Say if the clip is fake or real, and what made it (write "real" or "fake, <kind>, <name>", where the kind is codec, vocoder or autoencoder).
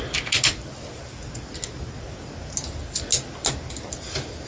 real